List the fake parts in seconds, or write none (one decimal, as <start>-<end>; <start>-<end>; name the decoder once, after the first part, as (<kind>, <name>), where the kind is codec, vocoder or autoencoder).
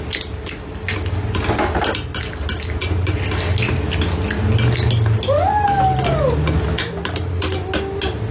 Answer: none